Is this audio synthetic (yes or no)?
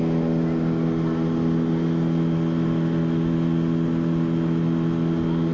no